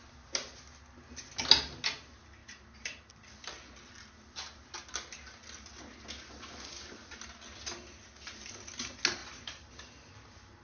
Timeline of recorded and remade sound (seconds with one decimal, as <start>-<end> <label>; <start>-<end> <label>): 0.0-2.4 recorded; 2.4-3.1 remade; 3.1-9.2 recorded; 9.2-9.7 remade; 9.7-10.6 recorded

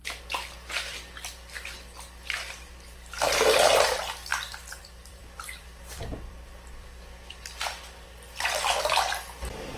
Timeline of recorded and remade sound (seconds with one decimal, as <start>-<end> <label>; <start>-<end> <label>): 0.0-4.3 recorded; 4.3-9.2 remade; 9.2-9.8 recorded

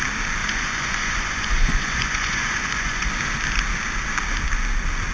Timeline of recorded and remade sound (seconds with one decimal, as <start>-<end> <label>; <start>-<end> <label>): 0.0-0.4 recorded; 0.4-3.1 remade; 3.1-5.1 recorded

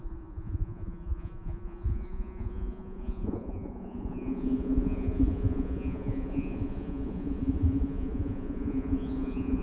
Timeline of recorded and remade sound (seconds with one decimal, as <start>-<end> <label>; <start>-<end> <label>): 0.0-9.6 remade